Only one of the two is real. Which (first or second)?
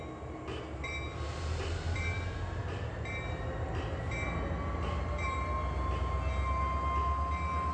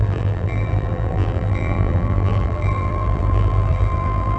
first